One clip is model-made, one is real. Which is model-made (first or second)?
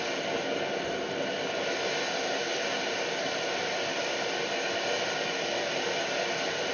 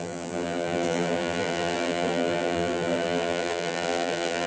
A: second